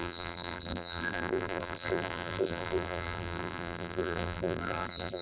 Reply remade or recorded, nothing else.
remade